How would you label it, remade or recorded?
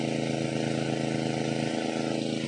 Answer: recorded